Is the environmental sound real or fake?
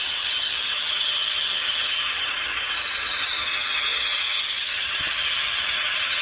fake